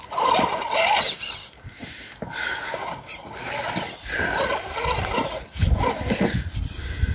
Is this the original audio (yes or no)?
yes